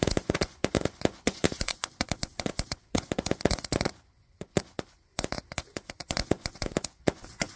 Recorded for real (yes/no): no